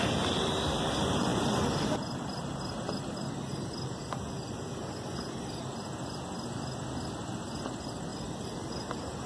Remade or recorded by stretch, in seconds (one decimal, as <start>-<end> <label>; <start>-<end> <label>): 0.0-9.3 recorded